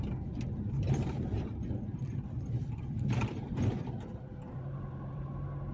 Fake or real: fake